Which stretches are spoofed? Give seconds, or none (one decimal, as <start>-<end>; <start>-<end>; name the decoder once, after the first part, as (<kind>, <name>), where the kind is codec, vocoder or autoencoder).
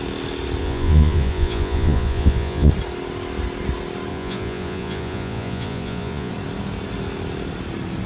0.6-2.7 (vocoder, Vocos); 4.1-6.3